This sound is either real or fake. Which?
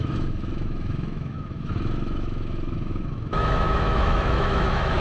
fake